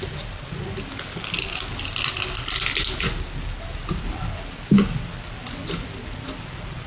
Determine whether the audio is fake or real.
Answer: real